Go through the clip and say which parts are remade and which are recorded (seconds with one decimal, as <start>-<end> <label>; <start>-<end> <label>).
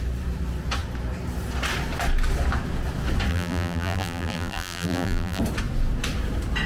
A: 0.0-3.3 recorded; 3.3-5.4 remade; 5.4-6.7 recorded